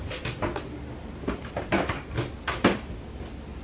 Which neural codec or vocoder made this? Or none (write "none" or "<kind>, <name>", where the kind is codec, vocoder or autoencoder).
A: none